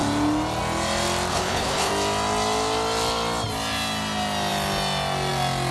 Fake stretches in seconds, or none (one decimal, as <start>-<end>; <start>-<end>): 1.3-1.9